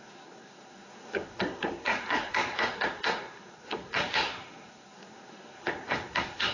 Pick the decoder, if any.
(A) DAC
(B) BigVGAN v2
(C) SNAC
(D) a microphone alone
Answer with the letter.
C